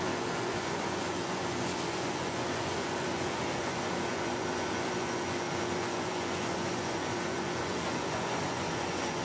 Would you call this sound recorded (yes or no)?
no